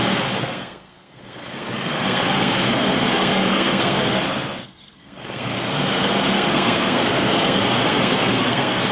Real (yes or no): no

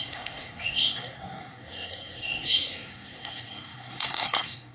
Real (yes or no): no